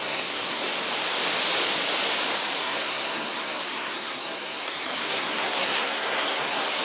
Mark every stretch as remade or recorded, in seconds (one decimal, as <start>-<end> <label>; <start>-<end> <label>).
0.0-0.6 remade; 0.6-2.6 recorded; 2.6-6.8 remade